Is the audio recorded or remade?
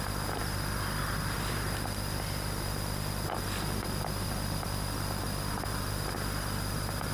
recorded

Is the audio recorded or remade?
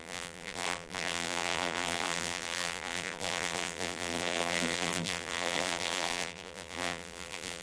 remade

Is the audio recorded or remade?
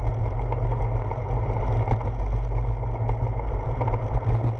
recorded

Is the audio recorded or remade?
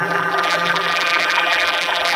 remade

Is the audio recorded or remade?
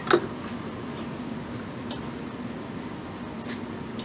recorded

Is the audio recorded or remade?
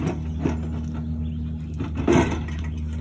recorded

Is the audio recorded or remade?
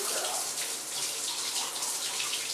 recorded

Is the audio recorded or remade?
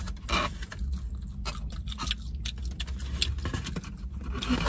recorded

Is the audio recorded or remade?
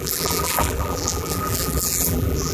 remade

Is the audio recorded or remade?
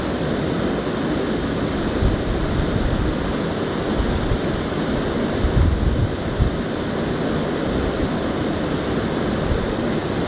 recorded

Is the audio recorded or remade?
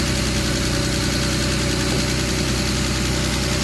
recorded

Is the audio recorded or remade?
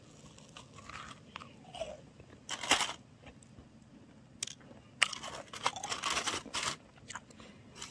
recorded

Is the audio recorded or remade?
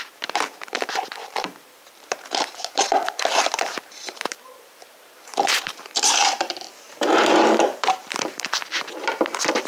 remade